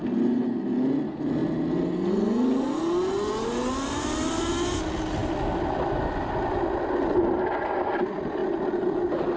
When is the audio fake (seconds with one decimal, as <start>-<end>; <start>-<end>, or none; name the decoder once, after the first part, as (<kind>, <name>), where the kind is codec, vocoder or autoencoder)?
none